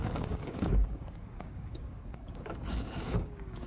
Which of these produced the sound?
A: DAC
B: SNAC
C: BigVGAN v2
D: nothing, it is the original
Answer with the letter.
A